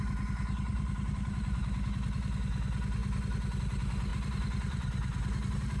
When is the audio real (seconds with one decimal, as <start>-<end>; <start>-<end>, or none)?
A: 0.0-0.7; 1.6-4.1